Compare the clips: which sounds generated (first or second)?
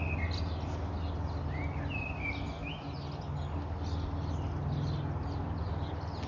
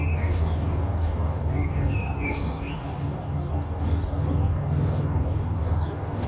second